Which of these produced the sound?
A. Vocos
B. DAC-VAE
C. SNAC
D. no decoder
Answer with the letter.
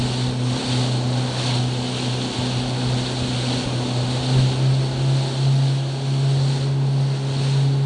D